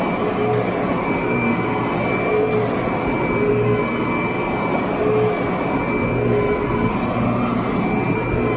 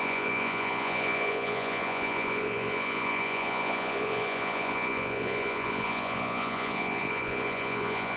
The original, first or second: first